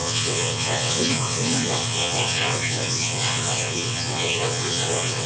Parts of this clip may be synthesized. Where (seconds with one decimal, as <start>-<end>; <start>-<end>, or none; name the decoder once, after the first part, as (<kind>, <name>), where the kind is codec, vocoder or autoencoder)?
0.0-5.3 (vocoder, WaveNeXt)